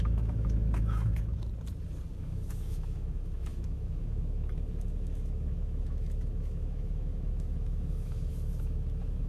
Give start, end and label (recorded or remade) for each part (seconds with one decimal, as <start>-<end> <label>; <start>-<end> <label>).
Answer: 0.0-1.5 remade; 1.5-2.2 recorded; 2.2-9.3 remade